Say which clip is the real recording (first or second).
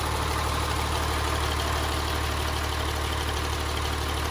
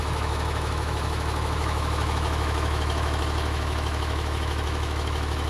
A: first